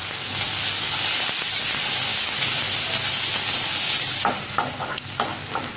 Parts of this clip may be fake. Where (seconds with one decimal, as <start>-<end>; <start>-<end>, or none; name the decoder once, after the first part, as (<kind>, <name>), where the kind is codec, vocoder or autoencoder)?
none